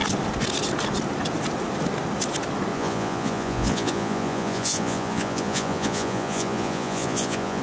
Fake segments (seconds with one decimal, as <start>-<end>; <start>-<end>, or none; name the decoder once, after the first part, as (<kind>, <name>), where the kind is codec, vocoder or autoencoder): 2.7-7.6 (vocoder, Vocos)